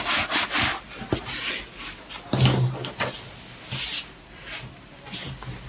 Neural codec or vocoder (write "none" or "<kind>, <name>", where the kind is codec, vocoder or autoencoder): none